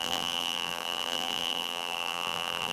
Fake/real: fake